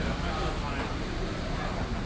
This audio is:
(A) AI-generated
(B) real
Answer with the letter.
B